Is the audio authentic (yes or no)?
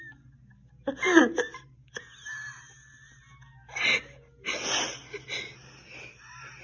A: yes